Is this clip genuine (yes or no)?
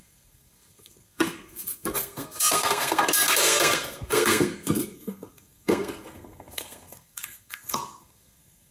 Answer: no